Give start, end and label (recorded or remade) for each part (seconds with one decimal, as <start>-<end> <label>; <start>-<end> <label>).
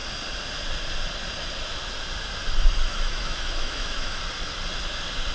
0.0-2.9 recorded; 2.9-4.2 remade; 4.2-5.3 recorded